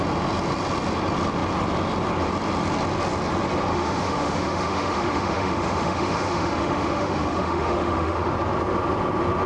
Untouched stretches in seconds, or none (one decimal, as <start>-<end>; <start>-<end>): 0.0-3.7; 8.3-9.5